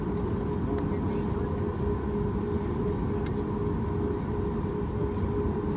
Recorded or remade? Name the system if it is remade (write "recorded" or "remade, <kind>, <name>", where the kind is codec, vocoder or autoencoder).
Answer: recorded